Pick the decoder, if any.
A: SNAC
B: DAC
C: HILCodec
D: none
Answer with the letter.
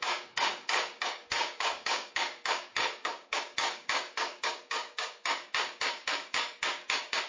B